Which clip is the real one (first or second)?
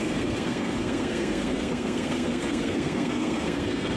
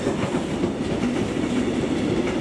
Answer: second